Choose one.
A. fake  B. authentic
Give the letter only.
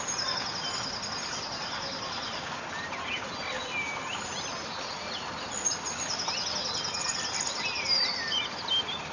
B